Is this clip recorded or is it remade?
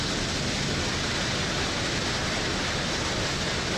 recorded